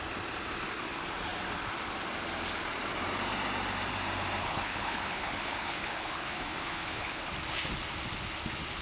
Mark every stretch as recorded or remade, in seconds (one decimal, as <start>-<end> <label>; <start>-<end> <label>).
0.0-4.4 recorded; 4.4-7.3 remade; 7.3-8.8 recorded